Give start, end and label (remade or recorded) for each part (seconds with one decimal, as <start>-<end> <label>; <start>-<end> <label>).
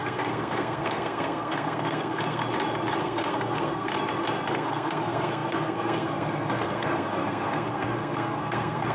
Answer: 0.0-2.4 remade; 2.4-3.0 recorded; 3.0-3.9 remade; 3.9-4.5 recorded; 4.5-8.9 remade